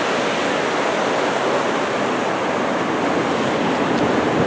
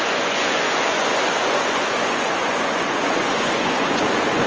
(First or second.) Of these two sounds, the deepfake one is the second